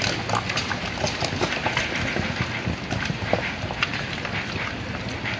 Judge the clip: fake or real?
real